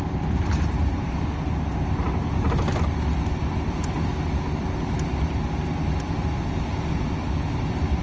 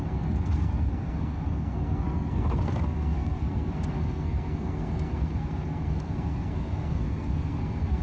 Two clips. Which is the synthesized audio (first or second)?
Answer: second